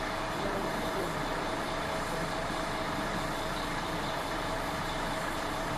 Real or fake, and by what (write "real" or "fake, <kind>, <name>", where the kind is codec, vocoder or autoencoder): fake, vocoder, BigVGAN v2